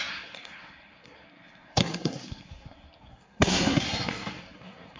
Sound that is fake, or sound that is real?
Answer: fake